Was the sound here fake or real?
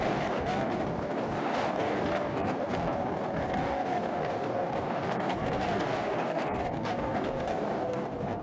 fake